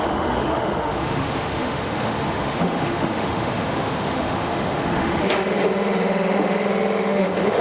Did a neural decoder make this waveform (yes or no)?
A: yes